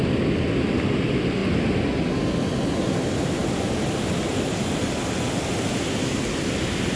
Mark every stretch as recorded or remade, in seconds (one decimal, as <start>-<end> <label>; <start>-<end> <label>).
0.0-7.0 recorded